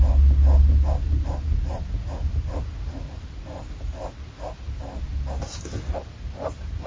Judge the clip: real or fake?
real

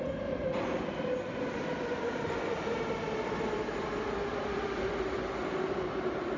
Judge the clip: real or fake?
real